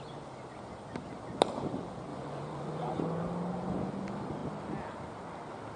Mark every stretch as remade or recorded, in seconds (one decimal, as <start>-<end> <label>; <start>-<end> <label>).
0.0-2.1 recorded; 2.1-3.0 remade; 3.0-5.8 recorded